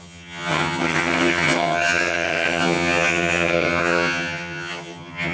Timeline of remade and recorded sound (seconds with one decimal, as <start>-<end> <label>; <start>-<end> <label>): 0.0-5.3 remade